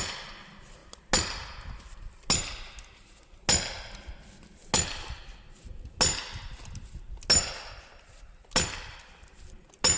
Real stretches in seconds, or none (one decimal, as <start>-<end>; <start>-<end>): 0.0-10.0